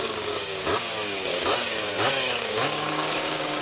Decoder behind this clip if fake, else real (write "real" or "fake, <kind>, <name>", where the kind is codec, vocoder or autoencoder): fake, codec, DAC